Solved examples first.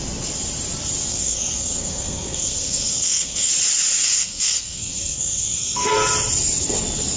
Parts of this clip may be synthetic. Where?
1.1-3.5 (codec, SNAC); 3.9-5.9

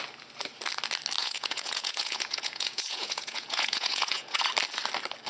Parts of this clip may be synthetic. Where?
1.2-4.4 (vocoder, Vocos)

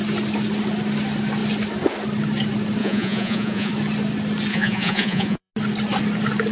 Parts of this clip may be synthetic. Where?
2.8-3.7 (vocoder, Vocos); 4.5-5.5

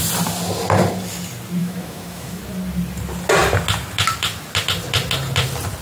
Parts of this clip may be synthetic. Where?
1.6-2.4 (autoencoder, DAC-VAE)